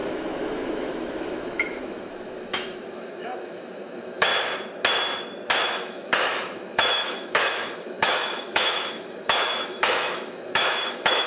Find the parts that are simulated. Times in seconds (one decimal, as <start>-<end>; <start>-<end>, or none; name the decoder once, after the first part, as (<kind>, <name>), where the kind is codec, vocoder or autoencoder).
0.0-4.3 (autoencoder, DAC-VAE); 5.7-11.3